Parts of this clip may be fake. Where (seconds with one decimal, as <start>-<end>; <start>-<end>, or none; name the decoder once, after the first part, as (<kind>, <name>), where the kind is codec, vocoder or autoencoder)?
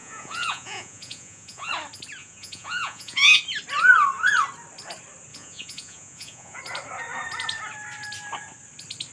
0.0-1.7 (vocoder, Vocos); 2.2-3.4; 5.3-6.6